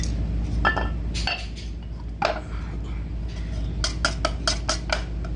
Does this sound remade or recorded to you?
recorded